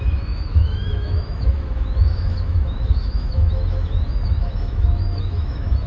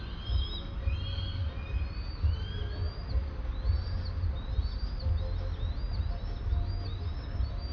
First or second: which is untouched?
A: second